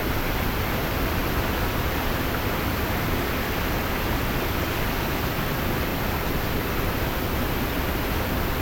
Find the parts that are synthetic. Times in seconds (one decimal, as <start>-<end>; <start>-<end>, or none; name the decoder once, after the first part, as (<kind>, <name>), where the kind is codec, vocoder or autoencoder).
none